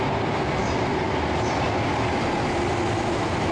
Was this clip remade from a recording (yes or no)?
no